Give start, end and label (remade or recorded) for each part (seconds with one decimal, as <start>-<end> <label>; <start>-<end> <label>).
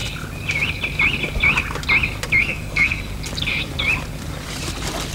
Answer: 0.0-2.4 recorded; 2.4-3.1 remade; 3.1-5.1 recorded